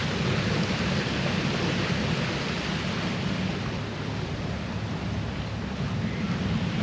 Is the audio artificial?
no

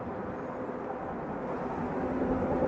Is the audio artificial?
no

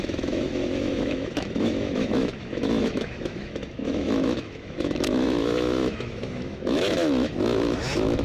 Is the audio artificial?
yes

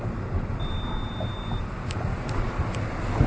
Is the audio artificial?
no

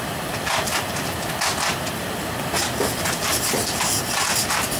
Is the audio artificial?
no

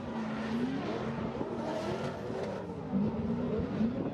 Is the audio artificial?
no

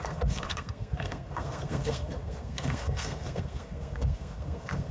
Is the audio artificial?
yes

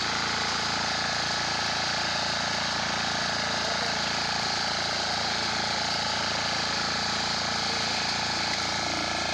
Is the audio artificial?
no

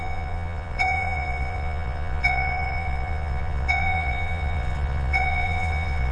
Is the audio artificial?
yes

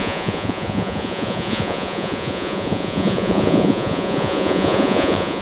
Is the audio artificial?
yes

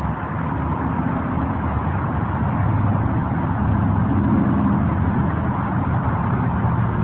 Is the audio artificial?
no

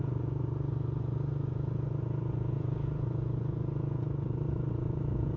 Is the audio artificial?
yes